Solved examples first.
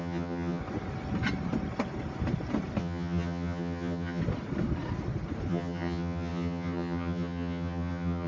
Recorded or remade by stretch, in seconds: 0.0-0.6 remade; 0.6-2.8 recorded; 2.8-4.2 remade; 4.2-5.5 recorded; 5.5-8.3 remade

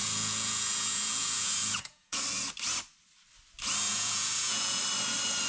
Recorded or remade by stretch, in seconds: 0.0-2.2 remade; 2.2-3.9 recorded; 3.9-4.8 remade; 4.8-5.5 recorded

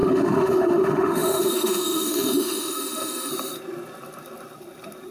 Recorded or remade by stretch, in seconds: 0.0-3.3 remade; 3.3-5.1 recorded

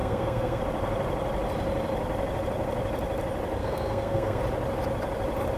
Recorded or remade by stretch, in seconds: 0.0-0.6 remade; 0.6-3.6 recorded; 3.6-4.4 remade; 4.4-5.6 recorded

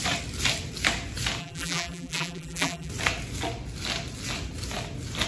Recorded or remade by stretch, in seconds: 0.0-1.4 recorded; 1.4-2.9 remade; 2.9-5.3 recorded